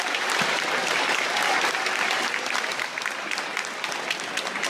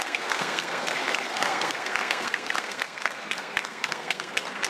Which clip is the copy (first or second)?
second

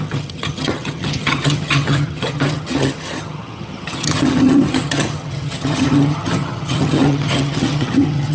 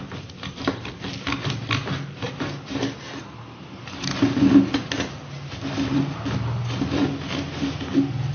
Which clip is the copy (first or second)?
first